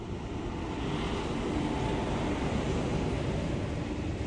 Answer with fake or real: real